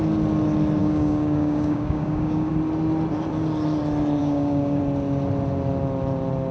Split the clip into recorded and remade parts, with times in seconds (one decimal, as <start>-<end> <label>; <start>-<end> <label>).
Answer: 0.0-0.8 recorded; 0.8-2.5 remade; 2.5-4.2 recorded; 4.2-4.8 remade; 4.8-6.5 recorded